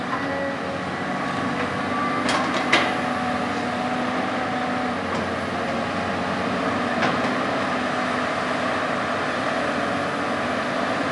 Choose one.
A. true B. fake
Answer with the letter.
A